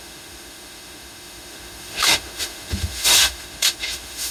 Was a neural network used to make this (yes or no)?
yes